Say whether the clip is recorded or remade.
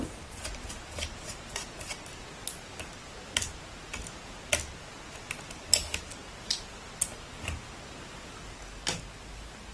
recorded